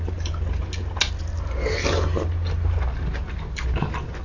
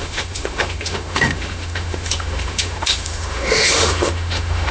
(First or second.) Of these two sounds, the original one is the first